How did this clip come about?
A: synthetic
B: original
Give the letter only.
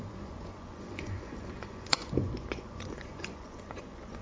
A